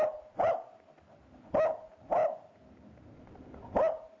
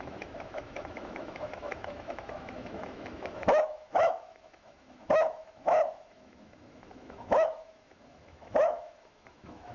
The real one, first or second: first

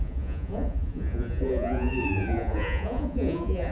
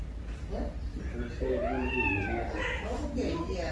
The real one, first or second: second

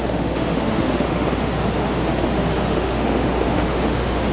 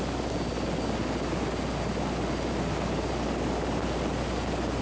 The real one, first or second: second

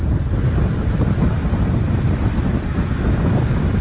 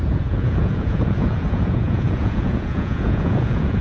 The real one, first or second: first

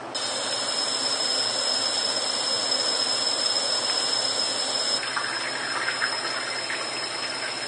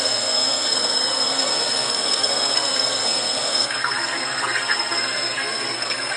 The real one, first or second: first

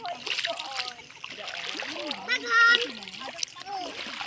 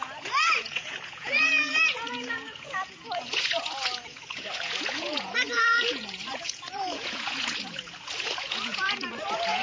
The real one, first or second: first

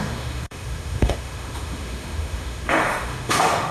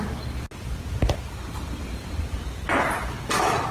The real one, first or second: second